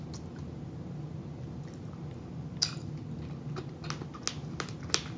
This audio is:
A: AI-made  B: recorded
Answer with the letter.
B